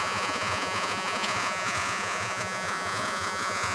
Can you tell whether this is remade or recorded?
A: remade